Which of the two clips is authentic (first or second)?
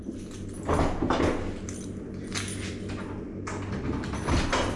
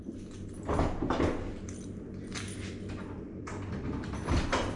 first